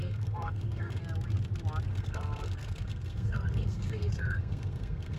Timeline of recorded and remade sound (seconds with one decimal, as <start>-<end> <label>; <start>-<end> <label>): 0.0-1.0 remade; 1.0-1.9 recorded; 1.9-5.2 remade